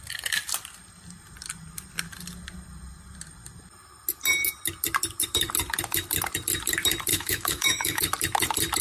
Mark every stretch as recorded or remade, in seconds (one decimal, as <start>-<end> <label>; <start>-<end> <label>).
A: 0.0-7.1 recorded; 7.1-8.0 remade; 8.0-8.8 recorded